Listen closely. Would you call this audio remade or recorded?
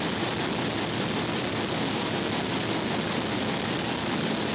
recorded